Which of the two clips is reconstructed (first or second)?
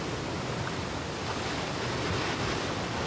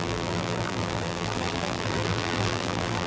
second